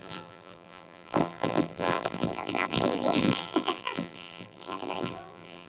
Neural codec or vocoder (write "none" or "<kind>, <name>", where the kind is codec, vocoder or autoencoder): vocoder, BigVGAN v2